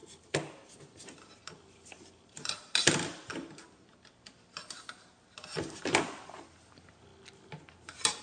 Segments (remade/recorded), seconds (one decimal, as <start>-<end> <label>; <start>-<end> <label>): 0.0-8.2 recorded